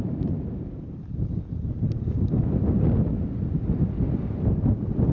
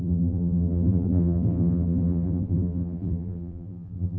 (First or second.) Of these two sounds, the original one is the first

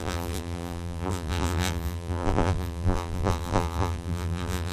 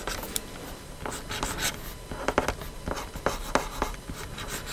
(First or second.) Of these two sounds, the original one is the second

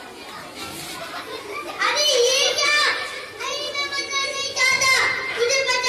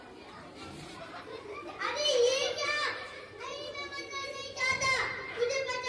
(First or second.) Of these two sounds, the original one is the first